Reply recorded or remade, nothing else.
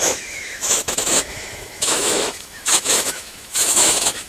remade